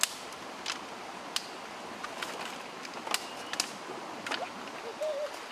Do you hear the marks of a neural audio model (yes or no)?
no